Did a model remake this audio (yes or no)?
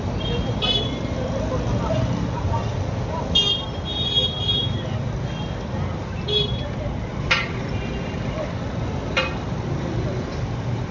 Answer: no